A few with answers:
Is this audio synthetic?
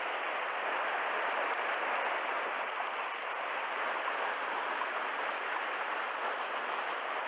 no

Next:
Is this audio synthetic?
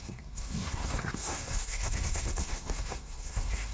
yes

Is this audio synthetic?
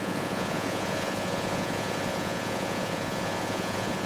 yes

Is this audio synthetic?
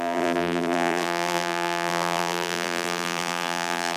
yes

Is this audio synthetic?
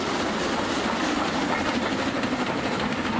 no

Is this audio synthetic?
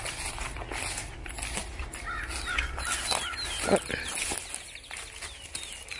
no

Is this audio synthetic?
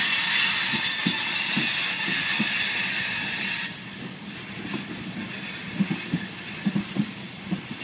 no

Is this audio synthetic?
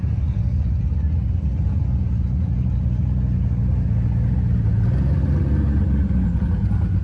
no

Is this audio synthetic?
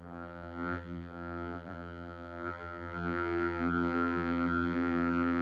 yes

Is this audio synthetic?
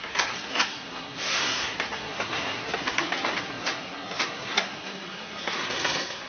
yes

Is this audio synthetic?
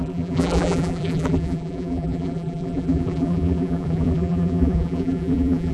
yes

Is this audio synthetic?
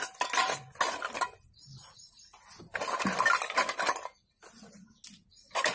no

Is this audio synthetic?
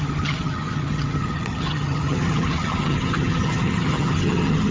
yes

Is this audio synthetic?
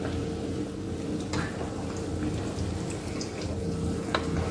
no